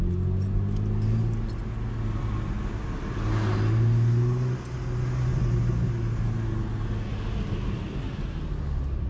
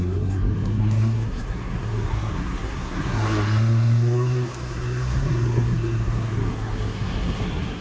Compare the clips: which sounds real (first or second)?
first